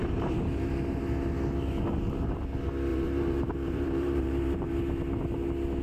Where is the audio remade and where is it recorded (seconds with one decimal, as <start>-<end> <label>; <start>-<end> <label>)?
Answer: 0.0-1.0 remade; 1.0-2.9 recorded; 2.9-4.7 remade; 4.7-5.8 recorded